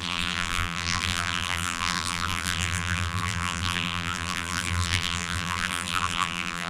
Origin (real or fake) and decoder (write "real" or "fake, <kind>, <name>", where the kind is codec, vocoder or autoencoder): fake, vocoder, BigVGAN v2